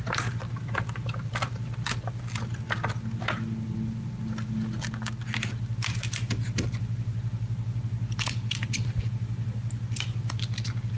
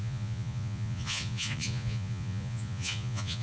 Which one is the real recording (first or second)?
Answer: first